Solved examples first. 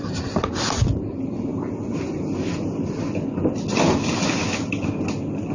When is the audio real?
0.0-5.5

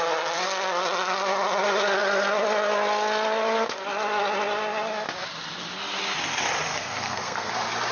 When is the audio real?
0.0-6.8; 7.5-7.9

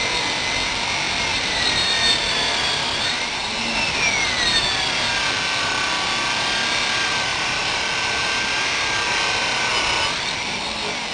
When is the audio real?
0.0-1.3; 4.0-7.3; 7.8-11.1

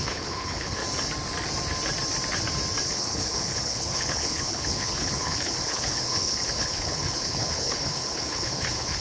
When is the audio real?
0.8-2.9